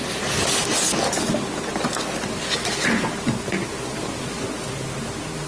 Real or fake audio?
real